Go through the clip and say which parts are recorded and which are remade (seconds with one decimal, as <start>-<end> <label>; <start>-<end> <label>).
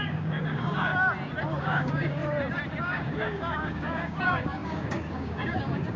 0.0-0.9 remade; 0.9-1.6 recorded; 1.6-2.2 remade; 2.2-2.8 recorded; 2.8-6.0 remade